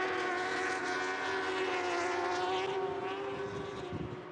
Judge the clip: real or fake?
real